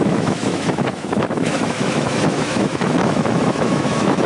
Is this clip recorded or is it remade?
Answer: remade